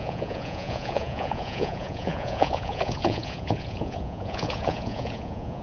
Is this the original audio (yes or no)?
no